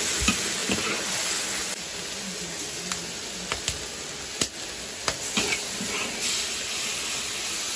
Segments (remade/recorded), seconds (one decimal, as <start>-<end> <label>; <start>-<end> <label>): 0.0-0.6 recorded; 0.6-1.3 remade; 1.3-7.8 recorded